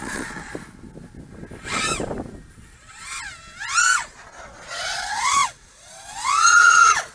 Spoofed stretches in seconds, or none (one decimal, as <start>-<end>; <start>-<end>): 0.0-0.4; 4.3-7.1